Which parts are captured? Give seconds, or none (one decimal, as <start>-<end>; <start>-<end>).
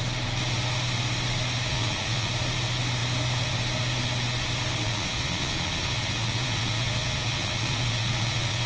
0.0-1.7; 2.3-4.8